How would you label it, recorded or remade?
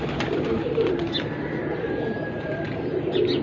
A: recorded